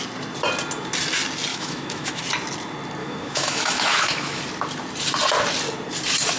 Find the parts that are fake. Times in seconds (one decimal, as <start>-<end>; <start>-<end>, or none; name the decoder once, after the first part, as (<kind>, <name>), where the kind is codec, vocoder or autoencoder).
1.5-2.2 (autoencoder, DAC-VAE); 3.0-4.4

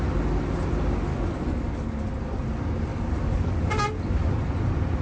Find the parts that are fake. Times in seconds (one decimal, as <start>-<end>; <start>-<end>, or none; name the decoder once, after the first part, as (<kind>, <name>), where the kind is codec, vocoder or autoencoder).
1.1-2.1 (codec, DAC); 2.9-3.6